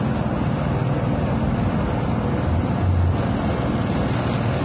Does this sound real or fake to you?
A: real